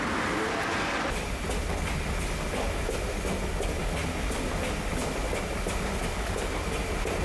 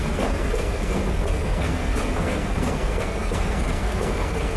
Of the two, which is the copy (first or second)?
second